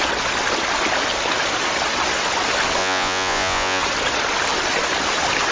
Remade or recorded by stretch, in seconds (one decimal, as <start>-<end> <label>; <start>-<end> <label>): 0.0-2.8 recorded; 2.8-3.8 remade; 3.8-5.5 recorded